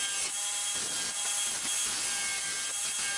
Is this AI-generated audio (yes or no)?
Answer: no